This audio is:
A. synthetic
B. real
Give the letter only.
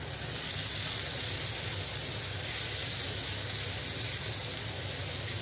B